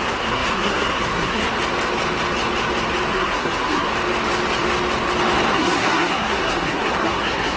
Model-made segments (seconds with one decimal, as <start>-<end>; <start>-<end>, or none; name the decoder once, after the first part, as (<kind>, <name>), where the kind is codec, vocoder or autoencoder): 0.0-1.5 (codec, SNAC); 3.1-3.9; 5.5-7.6